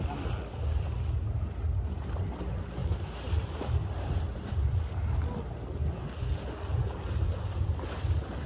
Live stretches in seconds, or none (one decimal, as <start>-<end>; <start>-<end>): 0.0-2.8; 4.8-6.7; 7.7-8.5

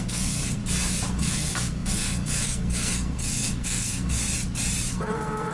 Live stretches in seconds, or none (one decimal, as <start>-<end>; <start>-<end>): 0.6-1.1; 4.2-4.9

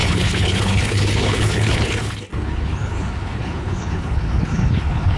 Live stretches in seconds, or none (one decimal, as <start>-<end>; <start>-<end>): none

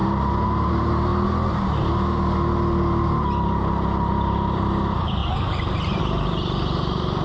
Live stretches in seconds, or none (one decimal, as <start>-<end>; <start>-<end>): 0.0-0.7; 1.1-4.1